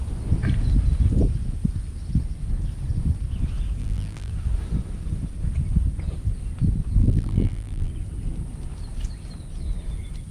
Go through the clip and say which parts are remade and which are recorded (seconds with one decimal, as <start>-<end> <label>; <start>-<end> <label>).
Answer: 0.0-3.8 recorded; 3.8-4.3 remade; 4.3-7.0 recorded; 7.0-7.9 remade; 7.9-10.3 recorded